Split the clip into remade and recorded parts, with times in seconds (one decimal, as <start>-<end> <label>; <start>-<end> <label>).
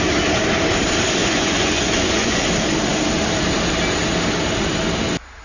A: 0.0-1.2 recorded; 1.2-2.4 remade; 2.4-5.4 recorded